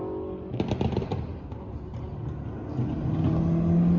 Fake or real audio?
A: real